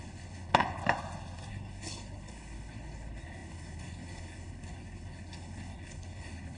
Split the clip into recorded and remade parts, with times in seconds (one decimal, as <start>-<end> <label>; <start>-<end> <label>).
0.0-0.8 remade; 0.8-1.5 recorded; 1.5-6.6 remade